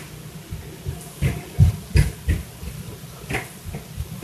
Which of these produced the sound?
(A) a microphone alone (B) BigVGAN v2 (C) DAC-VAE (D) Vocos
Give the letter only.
A